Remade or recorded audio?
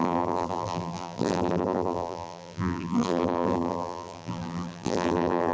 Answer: remade